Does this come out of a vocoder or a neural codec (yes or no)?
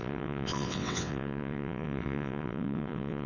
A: yes